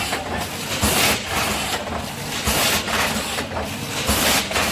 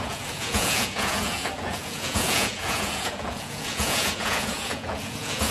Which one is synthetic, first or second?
second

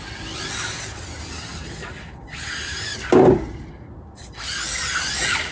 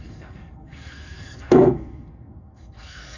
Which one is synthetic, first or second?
second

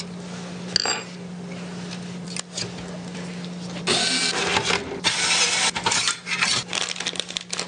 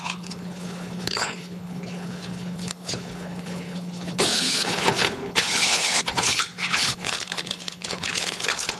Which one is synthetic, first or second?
second